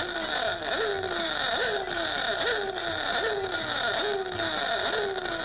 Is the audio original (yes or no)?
yes